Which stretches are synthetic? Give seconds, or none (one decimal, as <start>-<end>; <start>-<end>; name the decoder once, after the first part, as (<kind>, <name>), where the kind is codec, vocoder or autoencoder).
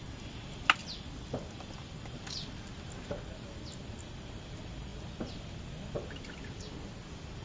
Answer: none